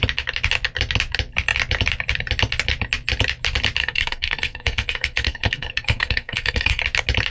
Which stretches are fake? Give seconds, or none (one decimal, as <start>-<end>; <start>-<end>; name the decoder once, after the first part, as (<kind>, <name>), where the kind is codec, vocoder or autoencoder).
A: 3.8-6.8 (codec, SNAC)